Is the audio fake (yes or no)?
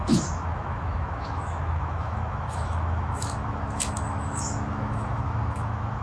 yes